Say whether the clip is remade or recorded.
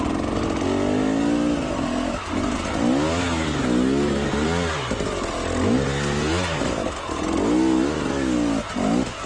recorded